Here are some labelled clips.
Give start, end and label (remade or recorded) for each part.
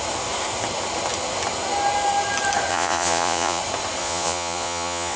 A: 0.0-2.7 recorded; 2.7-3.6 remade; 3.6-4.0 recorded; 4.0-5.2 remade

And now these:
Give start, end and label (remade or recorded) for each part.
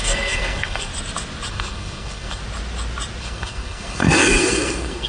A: 0.0-0.9 remade; 0.9-1.5 recorded; 1.5-2.4 remade; 2.4-3.2 recorded; 3.2-5.1 remade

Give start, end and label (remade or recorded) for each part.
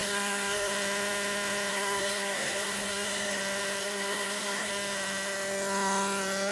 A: 0.0-0.7 remade; 0.7-1.7 recorded; 1.7-3.4 remade; 3.4-3.8 recorded; 3.8-4.7 remade; 4.7-6.5 recorded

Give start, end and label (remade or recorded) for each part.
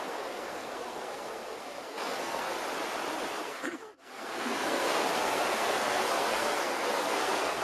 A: 0.0-2.5 remade; 2.5-3.4 recorded; 3.4-7.6 remade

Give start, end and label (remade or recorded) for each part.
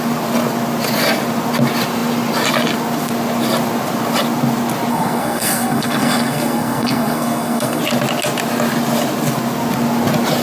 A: 0.0-4.9 recorded; 4.9-7.8 remade; 7.8-10.4 recorded